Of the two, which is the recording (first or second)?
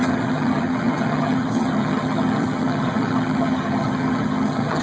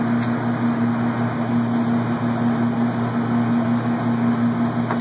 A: second